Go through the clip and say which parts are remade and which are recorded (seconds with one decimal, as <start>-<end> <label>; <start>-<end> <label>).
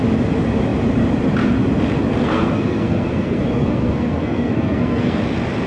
0.0-2.2 recorded; 2.2-5.2 remade; 5.2-5.7 recorded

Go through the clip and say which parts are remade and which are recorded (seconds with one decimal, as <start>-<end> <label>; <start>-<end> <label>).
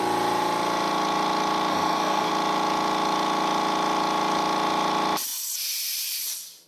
0.0-1.7 recorded; 1.7-2.3 remade; 2.3-6.7 recorded